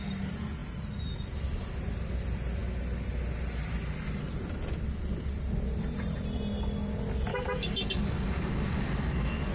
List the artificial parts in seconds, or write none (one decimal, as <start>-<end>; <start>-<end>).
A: 7.3-9.5

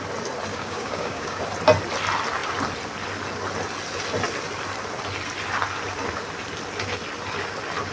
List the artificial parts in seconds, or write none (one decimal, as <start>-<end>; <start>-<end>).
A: 0.5-1.4

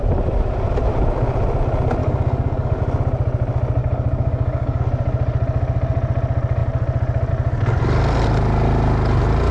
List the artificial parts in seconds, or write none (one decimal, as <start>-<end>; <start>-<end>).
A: 2.0-2.8; 3.8-4.8